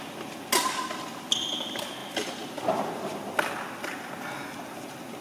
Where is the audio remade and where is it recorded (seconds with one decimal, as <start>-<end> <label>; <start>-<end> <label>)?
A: 0.0-5.2 recorded